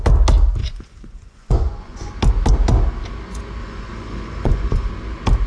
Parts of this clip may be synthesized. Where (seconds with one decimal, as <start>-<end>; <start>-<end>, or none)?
0.6-2.1; 3.6-4.9